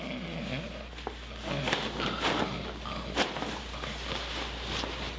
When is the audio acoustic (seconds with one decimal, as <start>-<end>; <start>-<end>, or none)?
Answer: 0.0-5.2